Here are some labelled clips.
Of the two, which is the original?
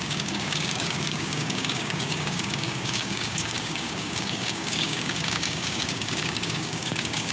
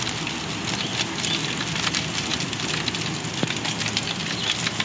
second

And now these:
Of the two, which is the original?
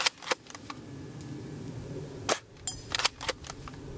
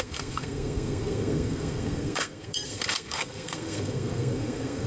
first